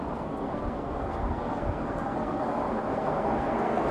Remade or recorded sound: remade